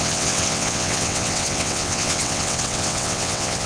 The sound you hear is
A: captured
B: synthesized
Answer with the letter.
B